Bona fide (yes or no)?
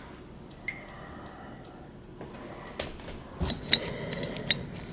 yes